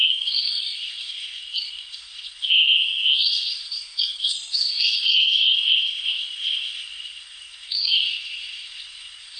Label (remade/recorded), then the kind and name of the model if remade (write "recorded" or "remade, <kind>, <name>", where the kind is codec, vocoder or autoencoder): remade, codec, SNAC